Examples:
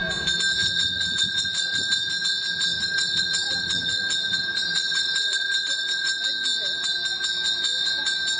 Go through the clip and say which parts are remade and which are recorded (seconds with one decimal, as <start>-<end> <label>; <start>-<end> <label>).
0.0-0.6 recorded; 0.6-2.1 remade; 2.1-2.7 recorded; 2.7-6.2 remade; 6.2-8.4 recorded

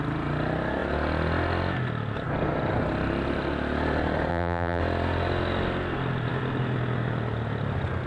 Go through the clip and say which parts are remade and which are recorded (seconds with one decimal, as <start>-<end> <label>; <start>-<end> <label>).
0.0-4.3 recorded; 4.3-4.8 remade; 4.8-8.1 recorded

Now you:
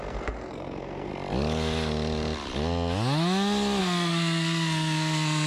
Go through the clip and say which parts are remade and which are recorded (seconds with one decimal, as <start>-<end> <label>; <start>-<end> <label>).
0.0-1.1 remade; 1.1-3.8 recorded; 3.8-5.5 remade

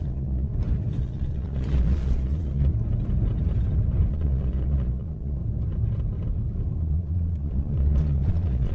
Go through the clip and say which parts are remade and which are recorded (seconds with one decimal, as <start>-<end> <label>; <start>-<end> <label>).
0.0-0.5 remade; 0.5-1.0 recorded; 1.0-2.7 remade; 2.7-4.1 recorded; 4.1-5.4 remade; 5.4-6.8 recorded; 6.8-8.7 remade